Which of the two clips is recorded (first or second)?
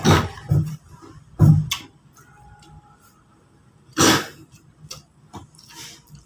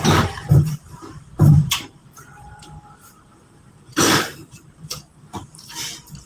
first